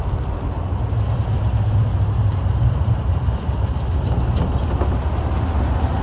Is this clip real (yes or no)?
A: yes